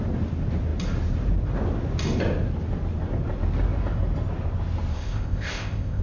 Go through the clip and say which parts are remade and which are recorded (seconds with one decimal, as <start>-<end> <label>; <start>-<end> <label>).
0.0-4.9 recorded; 4.9-6.0 remade